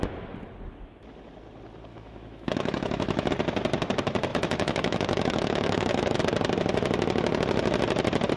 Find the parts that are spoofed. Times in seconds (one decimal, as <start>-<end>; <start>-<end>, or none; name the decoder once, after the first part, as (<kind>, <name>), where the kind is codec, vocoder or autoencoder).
1.9-3.3 (autoencoder, DAC-VAE); 4.3-6.2